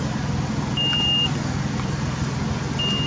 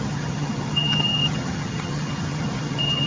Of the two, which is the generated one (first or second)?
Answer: second